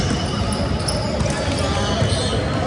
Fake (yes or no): no